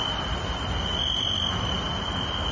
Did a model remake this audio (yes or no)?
no